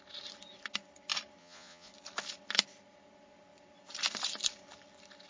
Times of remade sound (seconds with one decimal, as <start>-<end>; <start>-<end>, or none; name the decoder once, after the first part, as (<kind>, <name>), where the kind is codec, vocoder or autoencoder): 1.4-1.9 (vocoder, Vocos)